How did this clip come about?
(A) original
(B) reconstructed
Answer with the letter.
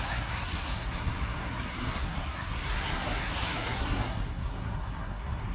B